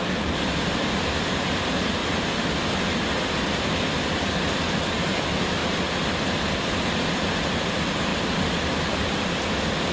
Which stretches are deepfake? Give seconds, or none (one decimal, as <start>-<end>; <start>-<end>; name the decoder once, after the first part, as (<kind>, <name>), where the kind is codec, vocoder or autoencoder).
none